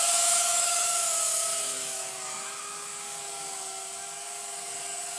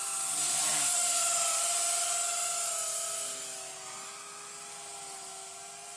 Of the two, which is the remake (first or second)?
first